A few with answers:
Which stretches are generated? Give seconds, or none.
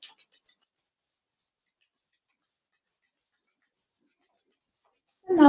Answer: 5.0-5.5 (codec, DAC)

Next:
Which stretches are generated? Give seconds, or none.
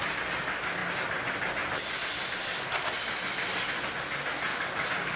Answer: 4.5-5.2 (codec, DAC)